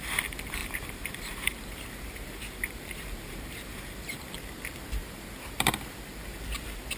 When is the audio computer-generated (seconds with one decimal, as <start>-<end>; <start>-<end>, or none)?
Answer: 0.6-4.2; 5.0-5.7